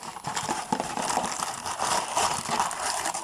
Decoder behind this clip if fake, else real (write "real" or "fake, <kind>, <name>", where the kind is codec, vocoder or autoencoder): fake, vocoder, BigVGAN v2